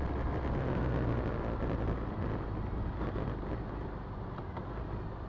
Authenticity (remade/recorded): recorded